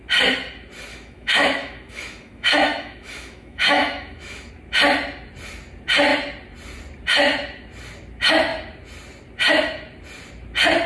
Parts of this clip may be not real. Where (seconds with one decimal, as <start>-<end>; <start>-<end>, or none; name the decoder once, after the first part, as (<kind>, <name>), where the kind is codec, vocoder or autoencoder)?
0.9-4.5 (autoencoder, DAC-VAE)